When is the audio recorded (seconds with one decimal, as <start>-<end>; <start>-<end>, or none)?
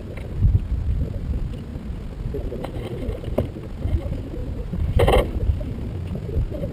0.0-4.4; 5.9-6.7